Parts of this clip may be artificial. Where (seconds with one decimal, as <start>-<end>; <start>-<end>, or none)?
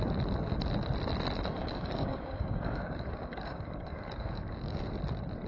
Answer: 1.6-4.9